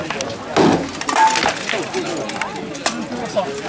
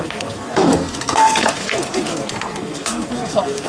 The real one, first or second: first